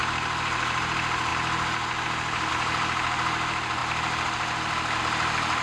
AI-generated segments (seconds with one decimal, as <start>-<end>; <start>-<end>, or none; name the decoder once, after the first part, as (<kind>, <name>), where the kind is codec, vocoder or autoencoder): none